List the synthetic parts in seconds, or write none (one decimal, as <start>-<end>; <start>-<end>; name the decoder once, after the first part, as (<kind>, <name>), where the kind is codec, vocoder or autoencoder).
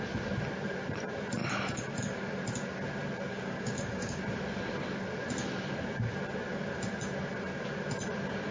3.3-4.2 (codec, DAC)